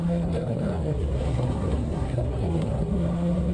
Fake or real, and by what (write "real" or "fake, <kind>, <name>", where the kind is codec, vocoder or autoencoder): fake, codec, SNAC